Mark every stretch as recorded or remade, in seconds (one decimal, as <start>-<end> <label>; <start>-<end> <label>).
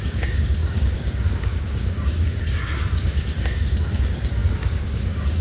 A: 0.0-5.4 remade